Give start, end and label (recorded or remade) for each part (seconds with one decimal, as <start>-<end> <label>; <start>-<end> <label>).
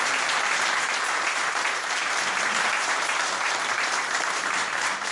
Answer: 0.0-5.1 remade